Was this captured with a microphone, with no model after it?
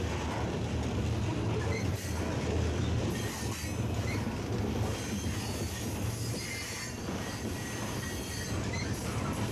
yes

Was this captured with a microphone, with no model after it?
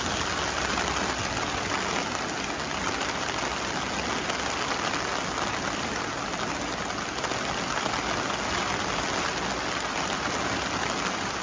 yes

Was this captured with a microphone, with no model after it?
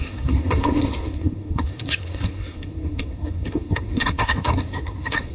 no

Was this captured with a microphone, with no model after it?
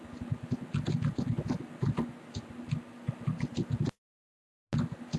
yes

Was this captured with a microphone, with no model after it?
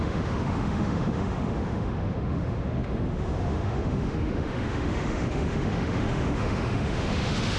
no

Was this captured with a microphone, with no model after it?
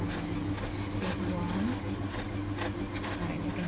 yes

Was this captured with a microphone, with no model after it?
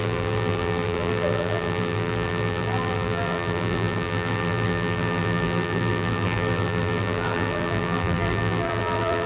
no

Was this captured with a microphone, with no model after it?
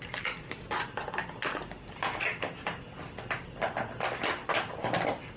yes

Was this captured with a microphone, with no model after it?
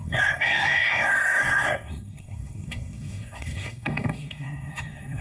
no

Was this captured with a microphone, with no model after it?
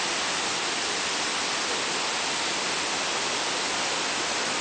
yes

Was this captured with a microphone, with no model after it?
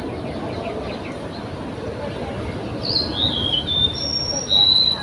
yes